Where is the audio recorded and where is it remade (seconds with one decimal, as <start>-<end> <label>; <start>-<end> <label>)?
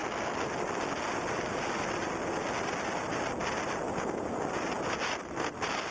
0.0-5.9 recorded